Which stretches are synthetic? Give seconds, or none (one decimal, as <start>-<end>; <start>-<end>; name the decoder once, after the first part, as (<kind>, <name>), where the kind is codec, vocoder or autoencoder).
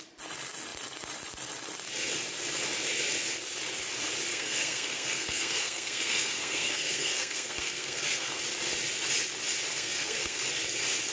4.3-8.4 (codec, SNAC); 9.7-10.4